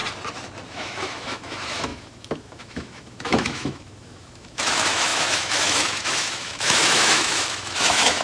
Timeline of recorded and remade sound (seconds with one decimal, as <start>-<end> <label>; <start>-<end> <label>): 0.0-0.7 recorded; 0.7-8.2 remade